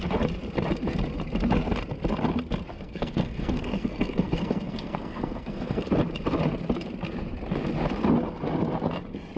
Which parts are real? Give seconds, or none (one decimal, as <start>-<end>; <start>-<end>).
0.0-2.7; 5.9-9.4